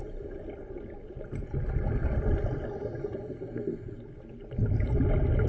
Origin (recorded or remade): recorded